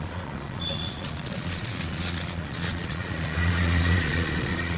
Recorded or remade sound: remade